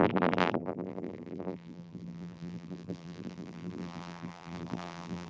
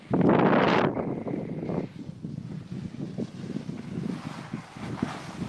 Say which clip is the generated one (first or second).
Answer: first